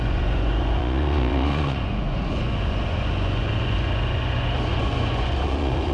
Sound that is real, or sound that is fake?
fake